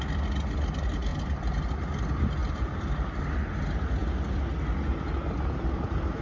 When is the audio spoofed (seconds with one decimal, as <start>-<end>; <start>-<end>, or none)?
none